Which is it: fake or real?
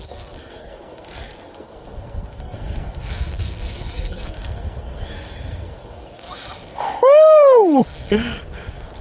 fake